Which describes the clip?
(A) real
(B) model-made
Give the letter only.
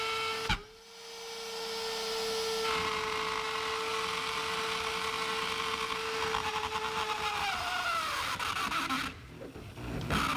A